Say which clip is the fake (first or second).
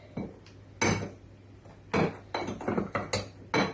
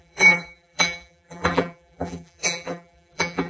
second